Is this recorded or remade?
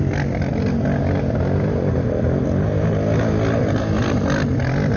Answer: recorded